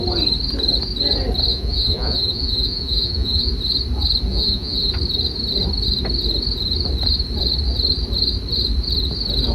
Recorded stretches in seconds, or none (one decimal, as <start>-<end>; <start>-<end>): 0.0-1.5; 3.5-4.3; 4.9-9.5